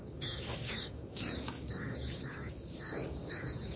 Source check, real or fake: fake